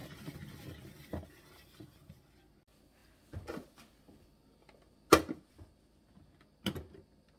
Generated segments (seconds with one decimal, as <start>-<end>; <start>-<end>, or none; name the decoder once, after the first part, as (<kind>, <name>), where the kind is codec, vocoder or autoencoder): none